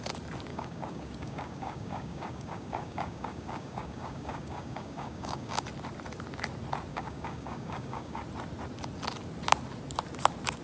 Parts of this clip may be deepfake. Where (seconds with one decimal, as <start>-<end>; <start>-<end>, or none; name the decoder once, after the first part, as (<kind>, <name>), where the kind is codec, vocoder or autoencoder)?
0.5-5.6 (codec, DAC); 6.9-8.2